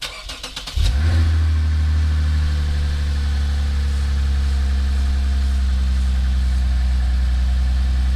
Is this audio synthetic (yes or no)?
no